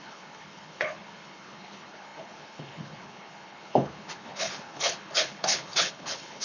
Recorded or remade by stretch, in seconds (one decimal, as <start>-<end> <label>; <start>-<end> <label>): 0.0-6.4 remade